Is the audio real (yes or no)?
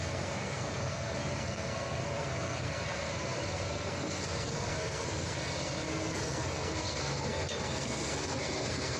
no